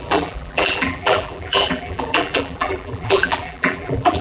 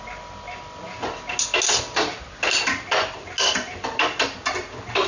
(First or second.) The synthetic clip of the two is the first